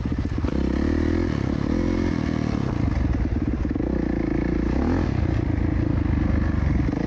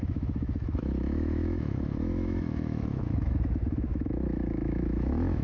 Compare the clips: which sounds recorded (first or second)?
first